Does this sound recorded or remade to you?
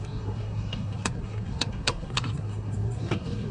remade